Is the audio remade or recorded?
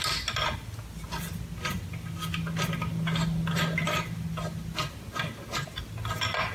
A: recorded